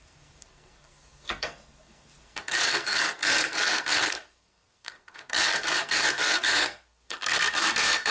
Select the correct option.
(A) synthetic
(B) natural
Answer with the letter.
A